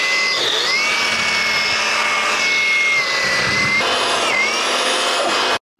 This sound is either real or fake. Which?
real